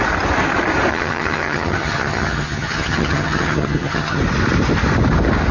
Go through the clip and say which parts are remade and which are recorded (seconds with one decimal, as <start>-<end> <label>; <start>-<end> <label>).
0.0-0.9 recorded; 0.9-4.2 remade; 4.2-5.5 recorded